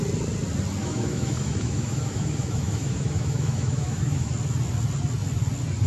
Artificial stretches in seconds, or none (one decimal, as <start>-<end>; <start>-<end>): 0.8-4.3